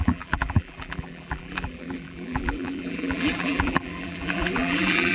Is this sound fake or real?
fake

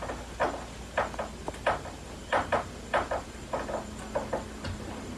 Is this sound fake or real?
real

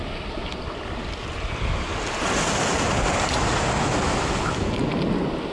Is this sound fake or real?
real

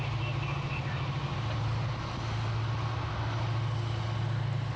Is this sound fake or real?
real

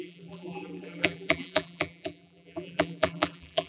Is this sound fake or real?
fake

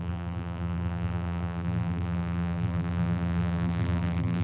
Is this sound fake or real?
fake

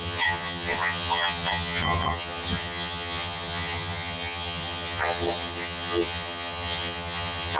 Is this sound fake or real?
fake